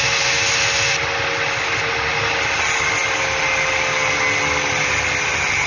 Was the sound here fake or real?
real